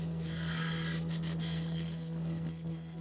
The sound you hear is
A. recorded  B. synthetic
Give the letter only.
B